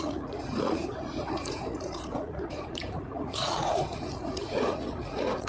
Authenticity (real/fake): fake